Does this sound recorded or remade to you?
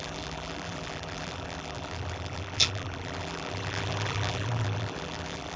remade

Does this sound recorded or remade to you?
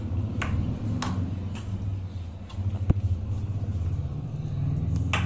recorded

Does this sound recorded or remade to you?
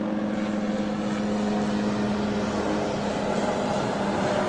recorded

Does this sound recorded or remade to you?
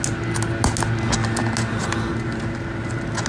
recorded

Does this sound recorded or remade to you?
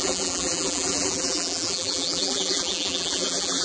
remade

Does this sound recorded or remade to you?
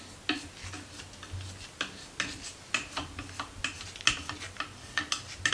recorded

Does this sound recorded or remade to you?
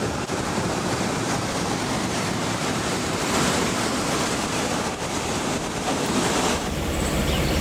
remade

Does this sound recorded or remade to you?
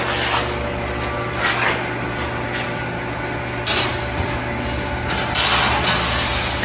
recorded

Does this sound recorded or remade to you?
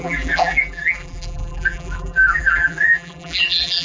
remade